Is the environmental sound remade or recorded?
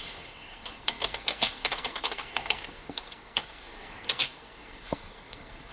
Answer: remade